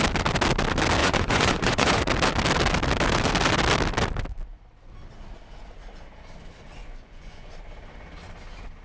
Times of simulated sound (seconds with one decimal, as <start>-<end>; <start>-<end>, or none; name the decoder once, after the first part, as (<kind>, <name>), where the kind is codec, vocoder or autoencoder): 1.0-2.0 (vocoder, Vocos); 6.8-7.5